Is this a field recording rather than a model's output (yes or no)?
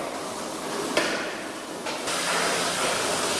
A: yes